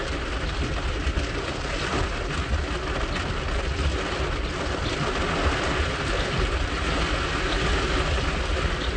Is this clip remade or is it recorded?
recorded